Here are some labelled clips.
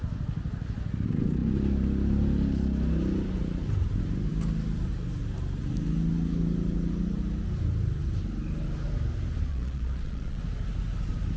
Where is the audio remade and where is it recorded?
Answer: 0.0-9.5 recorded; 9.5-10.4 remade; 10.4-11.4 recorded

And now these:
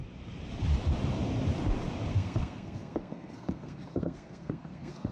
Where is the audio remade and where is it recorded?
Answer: 0.0-2.1 recorded; 2.1-5.1 remade

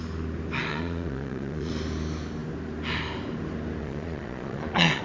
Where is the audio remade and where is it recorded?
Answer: 0.0-0.7 recorded; 0.7-1.7 remade; 1.7-3.8 recorded; 3.8-5.0 remade

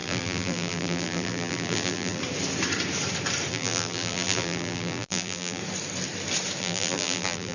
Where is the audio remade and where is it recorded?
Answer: 0.0-2.2 remade; 2.2-3.5 recorded; 3.5-5.6 remade; 5.6-6.6 recorded; 6.6-7.5 remade